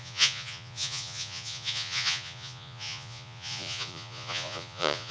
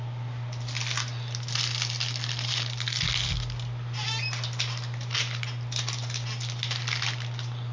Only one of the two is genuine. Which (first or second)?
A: second